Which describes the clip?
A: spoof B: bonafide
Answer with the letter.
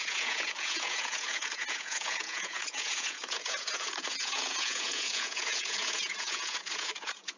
A